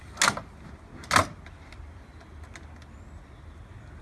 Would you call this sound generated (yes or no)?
no